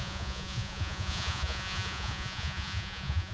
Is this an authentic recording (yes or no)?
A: no